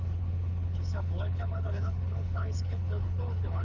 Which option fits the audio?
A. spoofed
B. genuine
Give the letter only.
A